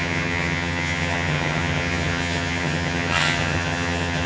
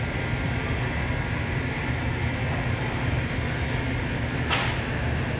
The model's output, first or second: first